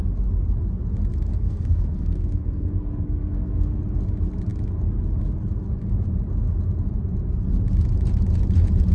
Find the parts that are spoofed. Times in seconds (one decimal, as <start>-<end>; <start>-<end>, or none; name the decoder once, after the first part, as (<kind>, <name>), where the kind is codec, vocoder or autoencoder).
1.3-3.8 (codec, SNAC)